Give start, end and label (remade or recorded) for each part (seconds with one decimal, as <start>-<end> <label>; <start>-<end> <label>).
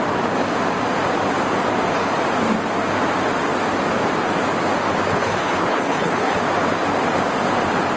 0.0-5.1 recorded; 5.1-6.4 remade; 6.4-8.0 recorded